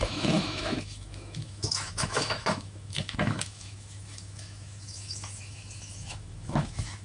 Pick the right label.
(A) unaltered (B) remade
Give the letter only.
B